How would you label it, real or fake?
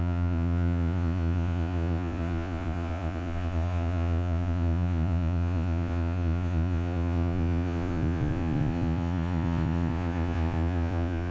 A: fake